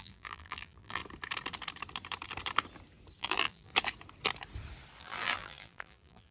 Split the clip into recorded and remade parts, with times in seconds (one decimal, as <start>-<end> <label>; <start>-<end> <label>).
0.0-1.0 remade; 1.0-3.2 recorded; 3.2-3.7 remade; 3.7-5.0 recorded; 5.0-6.3 remade